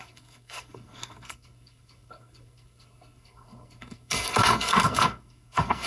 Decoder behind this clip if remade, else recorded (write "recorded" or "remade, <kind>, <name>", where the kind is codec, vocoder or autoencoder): remade, codec, SNAC